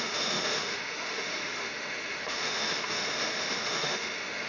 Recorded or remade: remade